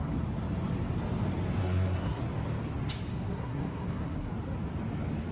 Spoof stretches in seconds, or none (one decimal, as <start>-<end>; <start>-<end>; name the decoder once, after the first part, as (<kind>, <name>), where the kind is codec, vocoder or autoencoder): 1.6-2.2 (codec, SNAC); 3.1-4.3